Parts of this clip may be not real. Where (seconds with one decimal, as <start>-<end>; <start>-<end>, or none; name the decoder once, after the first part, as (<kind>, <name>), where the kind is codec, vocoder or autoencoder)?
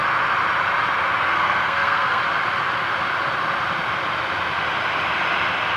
1.2-2.2 (codec, SNAC)